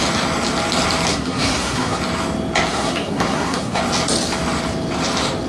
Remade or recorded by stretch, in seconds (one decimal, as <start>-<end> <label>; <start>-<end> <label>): 0.0-1.1 recorded; 1.1-2.0 remade; 2.0-2.7 recorded; 2.7-3.8 remade; 3.8-5.5 recorded